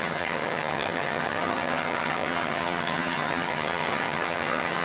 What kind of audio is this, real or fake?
fake